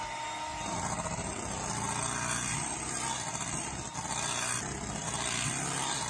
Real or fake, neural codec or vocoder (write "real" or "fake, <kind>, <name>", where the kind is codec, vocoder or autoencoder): real